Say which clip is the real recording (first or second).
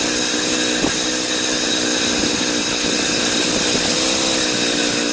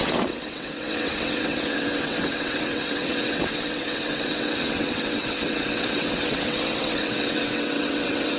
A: first